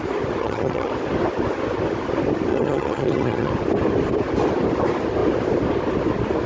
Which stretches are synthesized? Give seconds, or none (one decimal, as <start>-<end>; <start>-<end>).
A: 0.4-0.9; 2.5-3.5